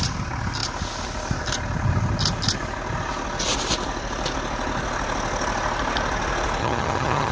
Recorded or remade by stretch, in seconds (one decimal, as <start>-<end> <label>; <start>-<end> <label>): 0.0-6.6 recorded; 6.6-7.3 remade

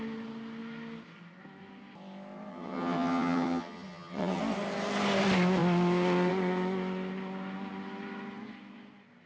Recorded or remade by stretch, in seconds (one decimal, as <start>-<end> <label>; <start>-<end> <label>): 0.0-2.5 recorded; 2.5-4.4 remade; 4.4-9.3 recorded